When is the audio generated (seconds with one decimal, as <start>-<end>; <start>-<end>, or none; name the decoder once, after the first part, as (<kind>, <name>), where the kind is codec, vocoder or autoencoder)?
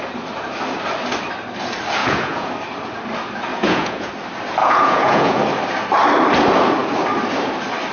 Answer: 2.0-2.5 (vocoder, Vocos); 3.5-4.1; 4.6-5.4